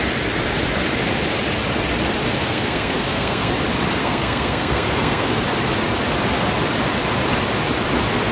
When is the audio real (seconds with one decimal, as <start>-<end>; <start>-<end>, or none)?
0.0-2.4; 3.5-4.0; 5.4-8.3